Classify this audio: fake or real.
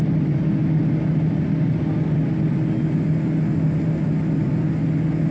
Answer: real